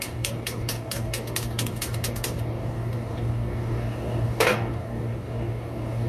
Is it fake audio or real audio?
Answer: fake